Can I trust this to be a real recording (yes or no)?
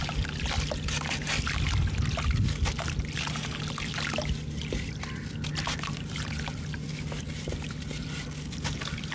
yes